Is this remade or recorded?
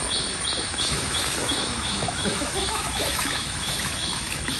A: remade